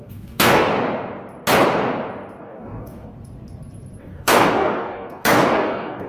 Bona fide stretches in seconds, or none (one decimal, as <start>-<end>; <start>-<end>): 0.7-2.4; 3.1-4.0